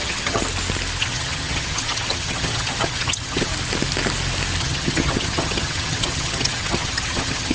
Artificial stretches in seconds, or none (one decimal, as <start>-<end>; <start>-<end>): 0.0-0.4; 1.0-3.5; 4.6-7.5